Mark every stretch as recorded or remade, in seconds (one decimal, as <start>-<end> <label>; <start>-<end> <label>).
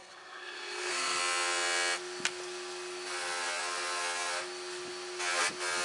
0.0-1.2 remade; 1.2-5.8 recorded